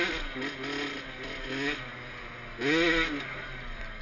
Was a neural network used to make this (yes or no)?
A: no